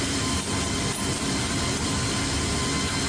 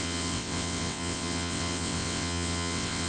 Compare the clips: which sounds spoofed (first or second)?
second